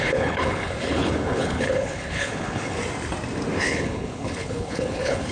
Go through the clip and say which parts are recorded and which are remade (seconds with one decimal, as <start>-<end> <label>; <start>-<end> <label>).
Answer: 0.0-2.8 remade; 2.8-3.6 recorded; 3.6-5.3 remade